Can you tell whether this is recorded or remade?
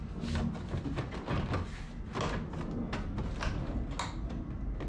recorded